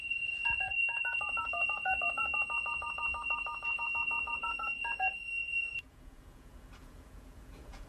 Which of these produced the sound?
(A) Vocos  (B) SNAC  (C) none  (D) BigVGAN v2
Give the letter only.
A